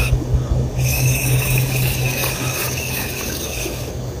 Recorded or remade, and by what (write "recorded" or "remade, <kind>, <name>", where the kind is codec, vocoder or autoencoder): remade, codec, DAC